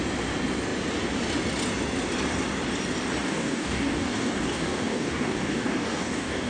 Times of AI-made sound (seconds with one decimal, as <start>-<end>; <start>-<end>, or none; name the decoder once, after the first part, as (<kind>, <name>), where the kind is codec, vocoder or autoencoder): 3.2-6.5 (codec, DAC)

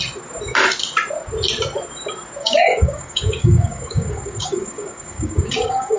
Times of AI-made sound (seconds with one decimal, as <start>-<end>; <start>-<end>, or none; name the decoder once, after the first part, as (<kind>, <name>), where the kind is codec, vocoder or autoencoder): 2.4-6.0 (codec, DAC)

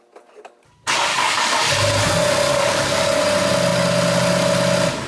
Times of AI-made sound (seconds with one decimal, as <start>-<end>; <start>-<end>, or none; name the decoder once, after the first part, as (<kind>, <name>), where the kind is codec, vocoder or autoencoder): 1.1-1.7 (codec, DAC); 2.5-3.2

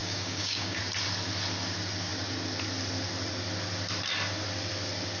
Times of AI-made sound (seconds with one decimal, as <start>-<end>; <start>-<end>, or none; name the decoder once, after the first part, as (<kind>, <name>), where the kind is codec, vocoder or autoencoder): 0.0-0.8 (codec, DAC)

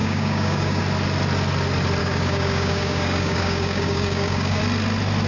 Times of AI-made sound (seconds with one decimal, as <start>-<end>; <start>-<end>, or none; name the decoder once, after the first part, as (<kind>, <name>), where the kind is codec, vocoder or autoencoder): 0.0-0.8 (codec, DAC); 2.0-4.6